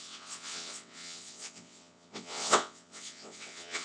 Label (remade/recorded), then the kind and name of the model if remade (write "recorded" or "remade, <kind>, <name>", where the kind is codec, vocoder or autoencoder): remade, vocoder, WaveNeXt